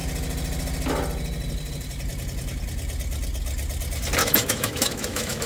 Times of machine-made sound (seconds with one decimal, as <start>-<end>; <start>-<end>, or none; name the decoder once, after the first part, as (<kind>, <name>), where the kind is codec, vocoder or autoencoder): 4.2-5.5 (autoencoder, DAC-VAE)